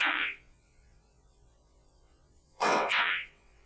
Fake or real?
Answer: fake